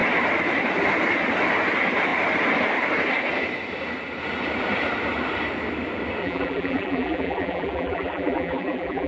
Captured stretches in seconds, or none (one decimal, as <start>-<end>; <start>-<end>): 0.0-6.2